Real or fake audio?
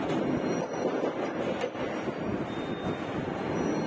real